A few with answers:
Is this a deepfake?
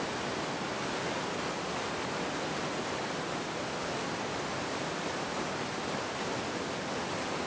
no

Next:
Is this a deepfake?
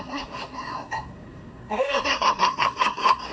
yes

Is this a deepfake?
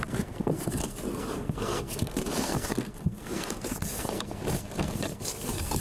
yes